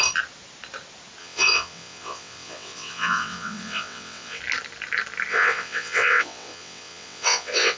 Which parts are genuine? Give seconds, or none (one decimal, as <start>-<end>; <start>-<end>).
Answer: 0.0-1.2; 4.4-5.3